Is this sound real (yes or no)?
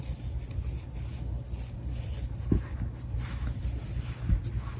yes